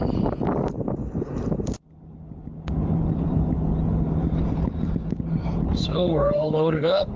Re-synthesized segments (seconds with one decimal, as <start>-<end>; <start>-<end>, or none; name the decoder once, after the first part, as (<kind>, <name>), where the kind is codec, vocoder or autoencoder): 5.9-7.2 (autoencoder, DAC-VAE)